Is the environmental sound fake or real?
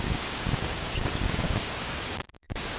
fake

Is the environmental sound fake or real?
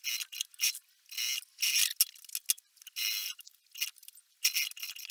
real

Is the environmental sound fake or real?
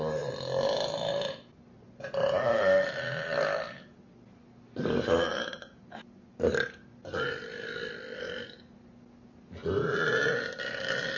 real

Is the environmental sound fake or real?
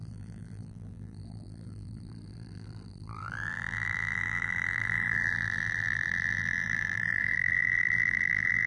fake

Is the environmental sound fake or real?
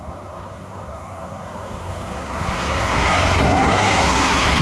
fake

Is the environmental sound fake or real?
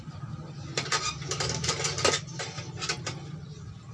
fake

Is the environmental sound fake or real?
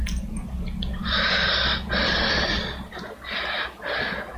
real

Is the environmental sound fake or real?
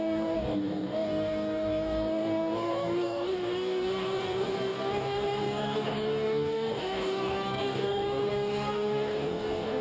fake